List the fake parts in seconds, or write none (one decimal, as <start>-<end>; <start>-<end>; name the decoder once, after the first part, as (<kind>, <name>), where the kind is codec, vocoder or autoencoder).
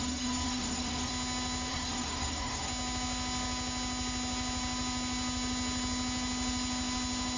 0.0-1.1 (codec, SNAC); 1.7-2.7